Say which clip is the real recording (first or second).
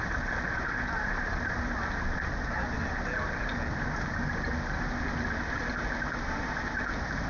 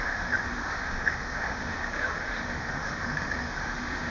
first